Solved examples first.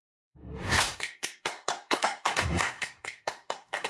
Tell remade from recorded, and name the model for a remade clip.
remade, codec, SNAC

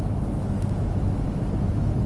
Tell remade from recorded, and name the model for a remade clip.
remade, autoencoder, DAC-VAE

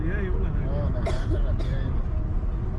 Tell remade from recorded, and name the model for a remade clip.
recorded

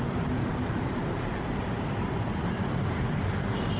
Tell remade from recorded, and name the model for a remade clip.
remade, vocoder, BigVGAN v2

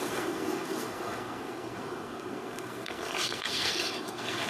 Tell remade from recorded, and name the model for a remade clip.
remade, codec, SNAC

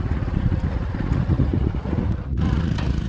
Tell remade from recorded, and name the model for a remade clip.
remade, vocoder, Vocos